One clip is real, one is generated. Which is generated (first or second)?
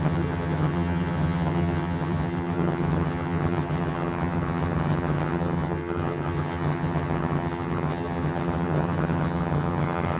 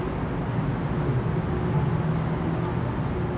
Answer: first